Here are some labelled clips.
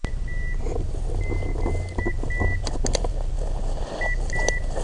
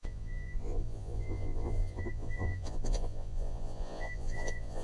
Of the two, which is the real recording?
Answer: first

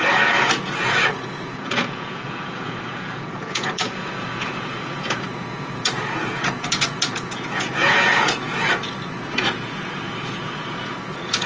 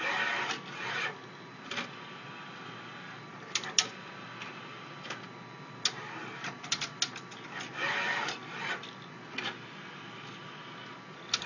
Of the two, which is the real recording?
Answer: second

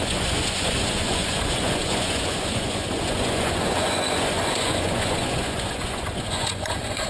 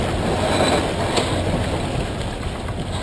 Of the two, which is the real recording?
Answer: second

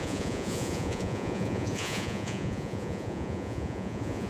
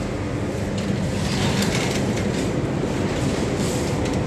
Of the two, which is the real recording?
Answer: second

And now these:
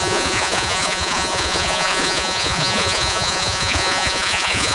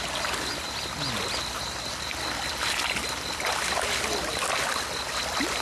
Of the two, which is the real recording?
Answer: second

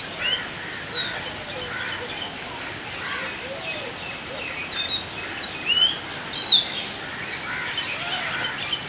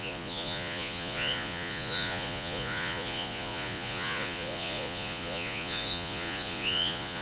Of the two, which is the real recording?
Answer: first